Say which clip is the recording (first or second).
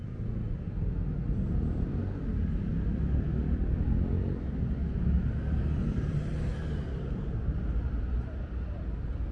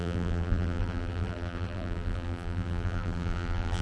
first